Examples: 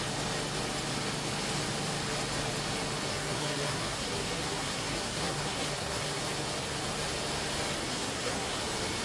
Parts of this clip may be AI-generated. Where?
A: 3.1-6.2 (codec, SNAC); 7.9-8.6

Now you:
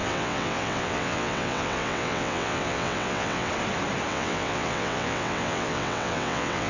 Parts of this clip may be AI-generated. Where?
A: 0.0-3.5 (vocoder, WaveNeXt); 4.1-6.7

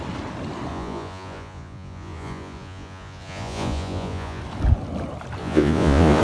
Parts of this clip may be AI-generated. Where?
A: 0.7-4.4 (vocoder, Vocos); 5.4-6.2

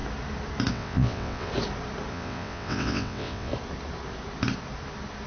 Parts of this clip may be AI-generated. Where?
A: 0.7-1.5 (vocoder, WaveNeXt); 2.1-3.5